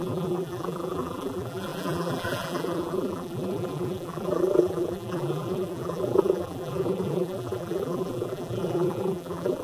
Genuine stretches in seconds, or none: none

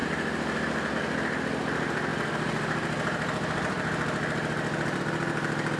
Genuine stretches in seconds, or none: 0.9-2.1; 5.0-5.8

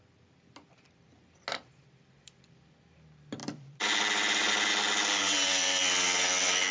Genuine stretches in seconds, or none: 0.0-3.4; 4.7-5.2; 5.8-6.7

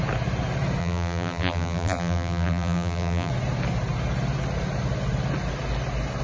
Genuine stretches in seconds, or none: 0.0-0.8; 3.3-6.2

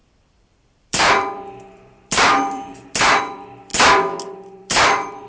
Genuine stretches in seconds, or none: 3.7-4.3